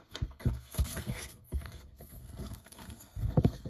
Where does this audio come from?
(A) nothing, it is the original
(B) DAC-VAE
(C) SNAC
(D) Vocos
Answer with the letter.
C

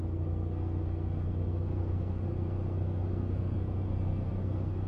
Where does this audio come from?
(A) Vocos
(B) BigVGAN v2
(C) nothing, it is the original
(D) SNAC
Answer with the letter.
D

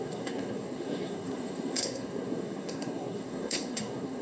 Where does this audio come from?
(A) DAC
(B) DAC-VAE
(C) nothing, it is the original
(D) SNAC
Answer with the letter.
D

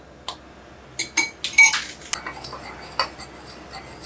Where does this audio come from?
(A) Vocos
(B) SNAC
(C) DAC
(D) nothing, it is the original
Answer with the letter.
D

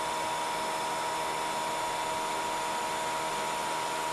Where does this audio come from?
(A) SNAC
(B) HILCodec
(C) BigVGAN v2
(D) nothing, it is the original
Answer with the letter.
D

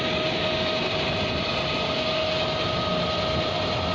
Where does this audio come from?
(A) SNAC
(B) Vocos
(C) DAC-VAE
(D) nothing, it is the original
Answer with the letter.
D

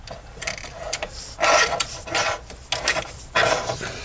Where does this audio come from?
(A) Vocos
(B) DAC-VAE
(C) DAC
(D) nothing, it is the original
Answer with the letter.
D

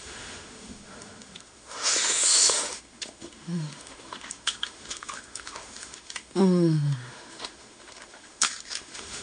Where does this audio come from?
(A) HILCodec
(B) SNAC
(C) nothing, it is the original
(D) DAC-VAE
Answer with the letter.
D